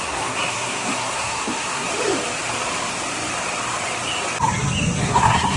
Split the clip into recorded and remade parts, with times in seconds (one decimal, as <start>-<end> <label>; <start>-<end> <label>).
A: 0.0-1.9 remade; 1.9-5.0 recorded; 5.0-5.6 remade